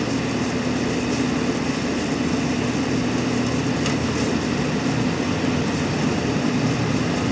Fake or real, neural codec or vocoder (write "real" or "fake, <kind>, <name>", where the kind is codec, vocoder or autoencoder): real